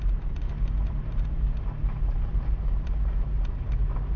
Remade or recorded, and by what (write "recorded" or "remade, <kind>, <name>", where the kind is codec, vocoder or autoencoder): remade, vocoder, BigVGAN v2